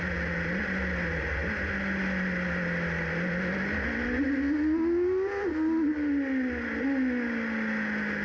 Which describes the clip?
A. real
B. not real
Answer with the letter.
A